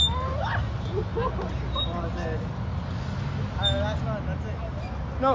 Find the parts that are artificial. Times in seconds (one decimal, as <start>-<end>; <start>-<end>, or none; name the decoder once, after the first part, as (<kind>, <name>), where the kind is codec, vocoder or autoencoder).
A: none